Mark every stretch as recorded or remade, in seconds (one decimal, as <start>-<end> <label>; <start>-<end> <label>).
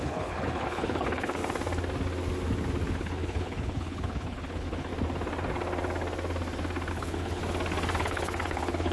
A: 0.0-1.4 remade; 1.4-2.9 recorded; 2.9-4.9 remade; 4.9-6.9 recorded; 6.9-7.4 remade; 7.4-8.0 recorded; 8.0-8.9 remade